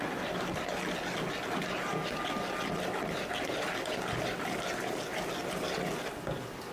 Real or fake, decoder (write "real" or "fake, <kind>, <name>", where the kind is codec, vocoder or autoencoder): real